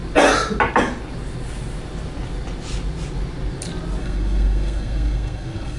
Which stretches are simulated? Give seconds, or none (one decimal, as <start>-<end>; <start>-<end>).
4.0-5.8